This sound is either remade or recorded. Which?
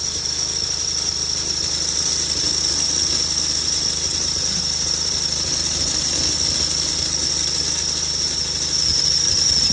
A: recorded